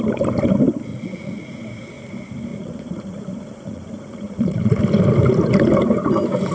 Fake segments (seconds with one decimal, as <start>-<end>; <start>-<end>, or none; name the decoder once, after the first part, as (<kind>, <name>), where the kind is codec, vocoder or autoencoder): 0.9-1.7 (vocoder, Vocos); 2.5-4.8